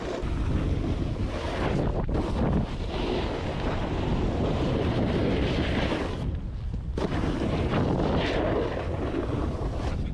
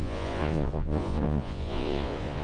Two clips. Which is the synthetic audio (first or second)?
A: second